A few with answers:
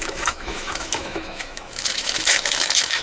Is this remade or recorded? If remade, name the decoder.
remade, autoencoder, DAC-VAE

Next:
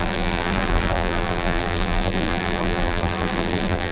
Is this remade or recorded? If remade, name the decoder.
remade, vocoder, BigVGAN v2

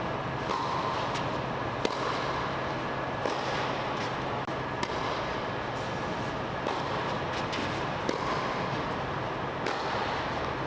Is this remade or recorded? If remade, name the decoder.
recorded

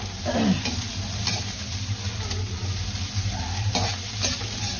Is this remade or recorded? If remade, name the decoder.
recorded